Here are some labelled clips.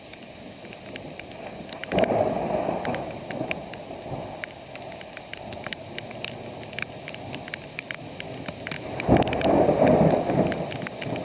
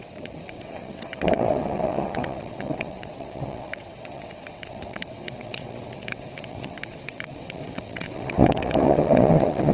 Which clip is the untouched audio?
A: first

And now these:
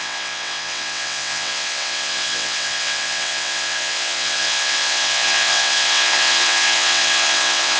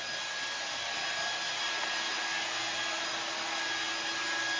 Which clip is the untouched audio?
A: second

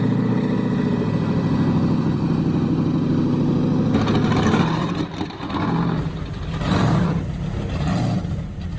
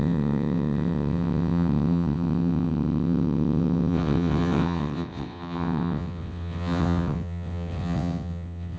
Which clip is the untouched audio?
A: first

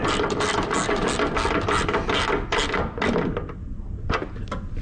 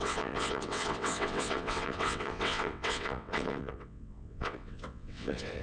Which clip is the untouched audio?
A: first